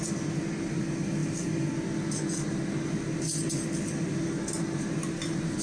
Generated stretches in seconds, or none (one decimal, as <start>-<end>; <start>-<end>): none